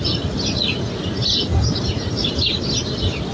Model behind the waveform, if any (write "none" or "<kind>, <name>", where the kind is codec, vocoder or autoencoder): none